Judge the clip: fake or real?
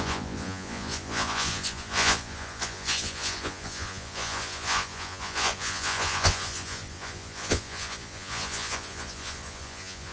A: fake